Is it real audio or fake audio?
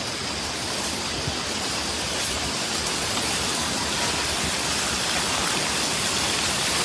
real